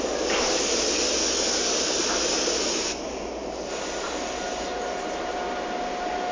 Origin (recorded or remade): recorded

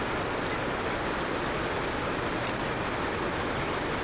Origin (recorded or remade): recorded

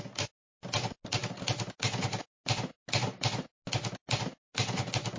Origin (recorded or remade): recorded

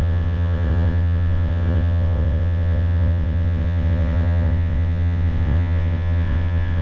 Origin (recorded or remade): remade